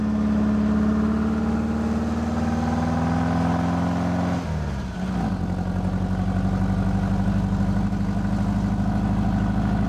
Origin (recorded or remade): recorded